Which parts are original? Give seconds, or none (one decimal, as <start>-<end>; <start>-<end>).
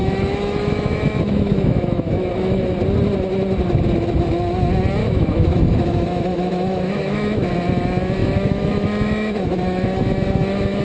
2.6-5.0; 7.5-8.2